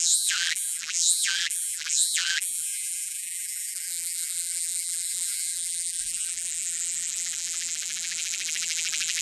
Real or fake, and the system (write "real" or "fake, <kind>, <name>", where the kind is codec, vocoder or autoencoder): fake, vocoder, BigVGAN v2